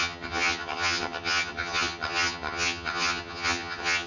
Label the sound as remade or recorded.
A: remade